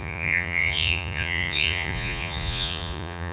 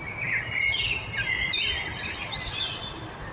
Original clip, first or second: second